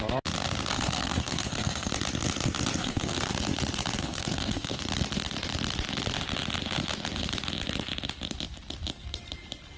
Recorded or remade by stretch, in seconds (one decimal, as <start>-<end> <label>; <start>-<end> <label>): 0.0-0.7 recorded; 0.7-1.9 remade; 1.9-2.8 recorded; 2.8-3.3 remade; 3.3-4.0 recorded; 4.0-4.8 remade; 4.8-9.8 recorded